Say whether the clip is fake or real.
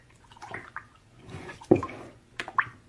fake